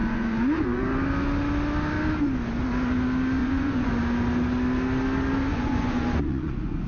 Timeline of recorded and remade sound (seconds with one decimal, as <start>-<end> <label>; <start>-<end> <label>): 0.0-0.8 remade; 0.8-3.4 recorded; 3.4-3.9 remade; 3.9-5.5 recorded; 5.5-6.9 remade

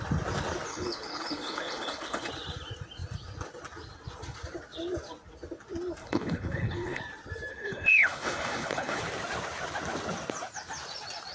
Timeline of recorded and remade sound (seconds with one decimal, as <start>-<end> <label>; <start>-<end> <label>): 0.0-0.7 recorded; 0.7-2.3 remade; 2.3-6.0 recorded; 6.0-7.0 remade; 7.0-7.5 recorded; 7.5-9.0 remade; 9.0-11.3 recorded

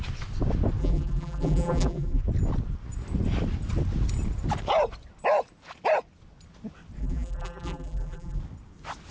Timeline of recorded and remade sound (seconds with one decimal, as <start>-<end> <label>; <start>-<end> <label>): 0.0-0.8 recorded; 0.8-2.2 remade; 2.2-7.0 recorded; 7.0-8.4 remade; 8.4-9.1 recorded

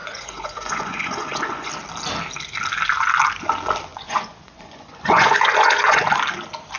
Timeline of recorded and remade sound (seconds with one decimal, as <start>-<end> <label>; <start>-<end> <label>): 0.0-1.7 remade; 1.7-3.9 recorded; 3.9-6.0 remade; 6.0-6.8 recorded

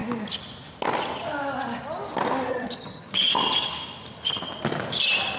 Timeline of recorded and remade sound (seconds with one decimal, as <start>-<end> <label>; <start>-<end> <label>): 0.0-2.5 recorded; 2.5-3.3 remade; 3.3-5.4 recorded

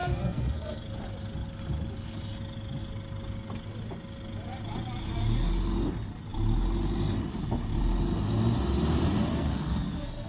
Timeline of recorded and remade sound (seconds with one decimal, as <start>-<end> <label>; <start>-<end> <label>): 0.0-0.8 remade; 0.8-9.3 recorded; 9.3-10.3 remade

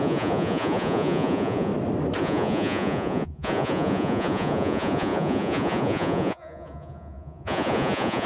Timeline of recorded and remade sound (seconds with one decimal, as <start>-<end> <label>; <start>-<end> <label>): 0.0-1.7 remade; 1.7-2.2 recorded; 2.2-8.3 remade